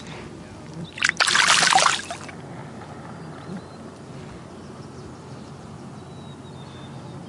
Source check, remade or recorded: recorded